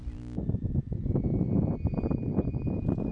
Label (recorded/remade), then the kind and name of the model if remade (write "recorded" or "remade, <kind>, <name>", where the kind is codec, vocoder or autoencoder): recorded